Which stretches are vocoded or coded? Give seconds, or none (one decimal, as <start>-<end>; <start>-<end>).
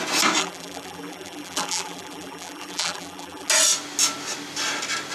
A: 0.4-3.5